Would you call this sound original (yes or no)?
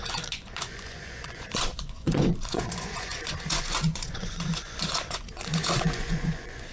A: no